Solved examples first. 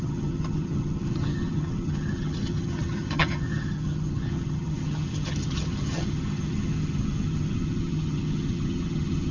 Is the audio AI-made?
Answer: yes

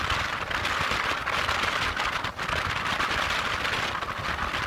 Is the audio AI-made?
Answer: no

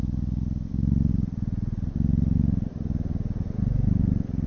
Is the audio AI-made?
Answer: no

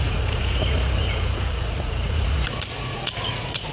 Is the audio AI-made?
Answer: yes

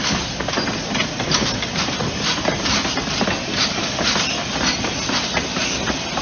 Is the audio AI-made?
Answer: no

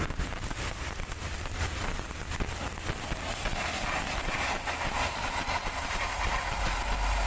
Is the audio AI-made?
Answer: no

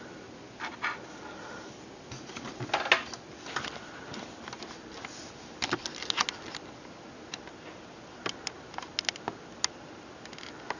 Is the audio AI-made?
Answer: no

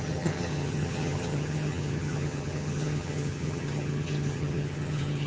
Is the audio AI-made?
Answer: yes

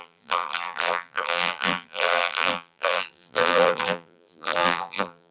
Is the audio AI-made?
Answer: yes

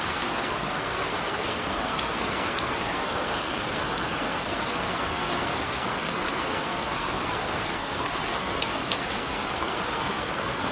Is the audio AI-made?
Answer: yes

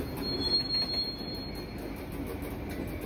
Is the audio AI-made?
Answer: no